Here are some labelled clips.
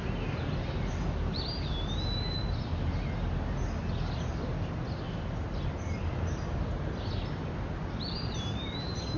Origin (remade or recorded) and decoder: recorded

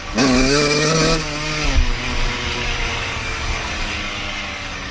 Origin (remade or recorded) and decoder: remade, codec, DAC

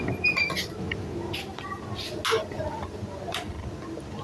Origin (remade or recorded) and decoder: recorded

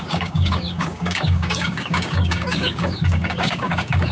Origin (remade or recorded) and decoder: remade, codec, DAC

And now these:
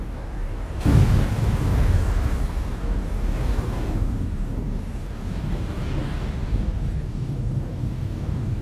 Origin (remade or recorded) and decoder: remade, codec, DAC